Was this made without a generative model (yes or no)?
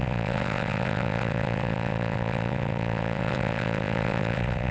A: no